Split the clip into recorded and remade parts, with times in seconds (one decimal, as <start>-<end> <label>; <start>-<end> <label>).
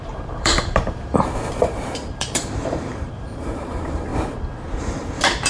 0.0-4.1 remade; 4.1-4.8 recorded; 4.8-5.5 remade